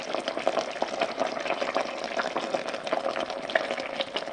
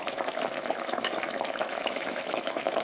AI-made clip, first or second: second